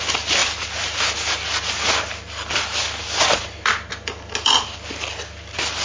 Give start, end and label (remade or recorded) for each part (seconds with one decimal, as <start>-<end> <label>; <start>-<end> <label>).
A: 0.0-5.8 recorded